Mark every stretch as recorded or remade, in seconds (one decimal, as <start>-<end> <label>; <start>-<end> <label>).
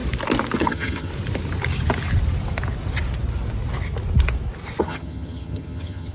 0.0-0.6 recorded; 0.6-1.1 remade; 1.1-4.8 recorded; 4.8-6.1 remade